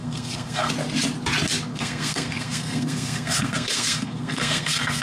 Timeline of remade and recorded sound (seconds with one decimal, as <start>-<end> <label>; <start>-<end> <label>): 0.0-0.7 remade; 0.7-1.7 recorded; 1.7-5.0 remade

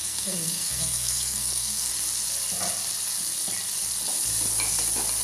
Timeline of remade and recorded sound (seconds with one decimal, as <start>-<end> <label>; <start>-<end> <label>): 0.0-1.9 remade; 1.9-5.2 recorded

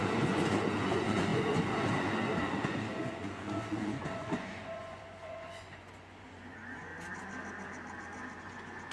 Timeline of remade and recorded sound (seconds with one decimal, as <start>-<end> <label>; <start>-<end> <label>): 0.0-6.9 remade; 6.9-8.4 recorded; 8.4-8.9 remade

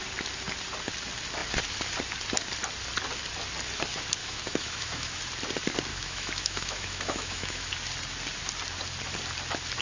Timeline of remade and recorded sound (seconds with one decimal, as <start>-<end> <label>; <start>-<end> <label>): 0.0-4.2 recorded; 4.2-5.2 remade; 5.2-5.9 recorded; 5.9-7.7 remade; 7.7-9.8 recorded

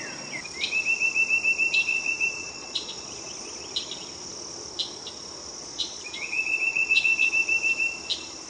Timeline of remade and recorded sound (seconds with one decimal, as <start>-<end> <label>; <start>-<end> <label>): 0.0-1.9 recorded; 1.9-3.6 remade; 3.6-5.5 recorded; 5.5-7.3 remade; 7.3-8.5 recorded

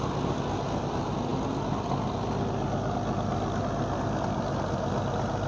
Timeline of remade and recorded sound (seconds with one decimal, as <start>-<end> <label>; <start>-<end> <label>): 0.0-5.5 recorded

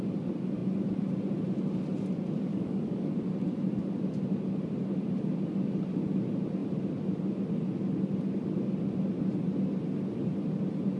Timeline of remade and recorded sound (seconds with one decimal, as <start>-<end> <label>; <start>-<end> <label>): 0.0-2.5 recorded; 2.5-3.1 remade; 3.1-11.0 recorded